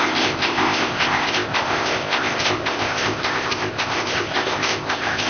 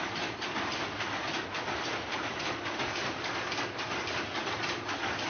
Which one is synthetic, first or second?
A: first